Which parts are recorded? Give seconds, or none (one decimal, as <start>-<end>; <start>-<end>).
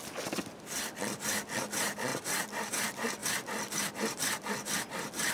0.0-5.3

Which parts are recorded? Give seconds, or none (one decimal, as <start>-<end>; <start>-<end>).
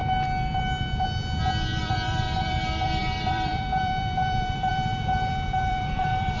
0.0-1.8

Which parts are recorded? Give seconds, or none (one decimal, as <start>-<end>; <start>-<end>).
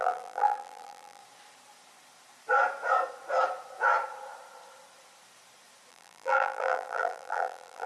1.2-5.9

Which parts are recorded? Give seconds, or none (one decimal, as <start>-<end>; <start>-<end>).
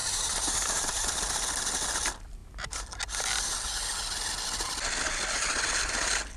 1.2-6.4